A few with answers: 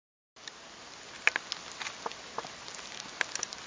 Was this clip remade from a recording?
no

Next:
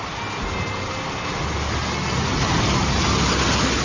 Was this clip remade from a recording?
no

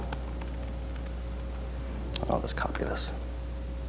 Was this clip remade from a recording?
no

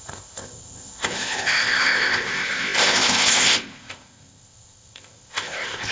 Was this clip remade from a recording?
yes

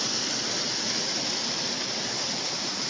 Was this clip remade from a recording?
no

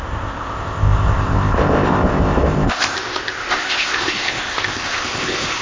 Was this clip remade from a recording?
yes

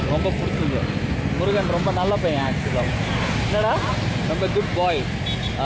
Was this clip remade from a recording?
no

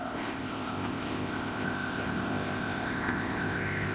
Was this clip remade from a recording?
yes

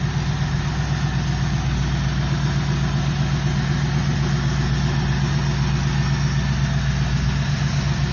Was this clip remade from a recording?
no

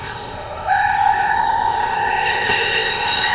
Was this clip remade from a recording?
yes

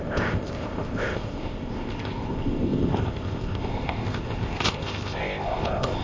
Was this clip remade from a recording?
yes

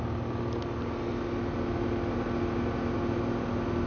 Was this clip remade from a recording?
no